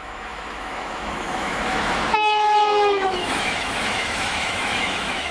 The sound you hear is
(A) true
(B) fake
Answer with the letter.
B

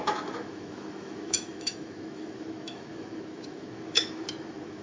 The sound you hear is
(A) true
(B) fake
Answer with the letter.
B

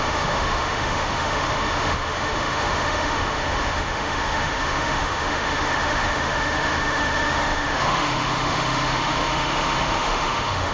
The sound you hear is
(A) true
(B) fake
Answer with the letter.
B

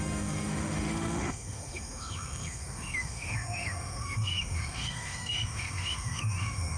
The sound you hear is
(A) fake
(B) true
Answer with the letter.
A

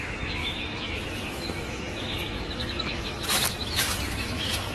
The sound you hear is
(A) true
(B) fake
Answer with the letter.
B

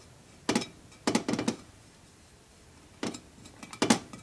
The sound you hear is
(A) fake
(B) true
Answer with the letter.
B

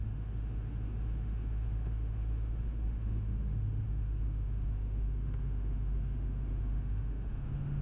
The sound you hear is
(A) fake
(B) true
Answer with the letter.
A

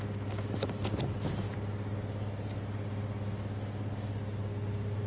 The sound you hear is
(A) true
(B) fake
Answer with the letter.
A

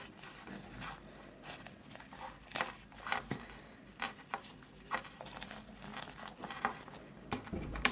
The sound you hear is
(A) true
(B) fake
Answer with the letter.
A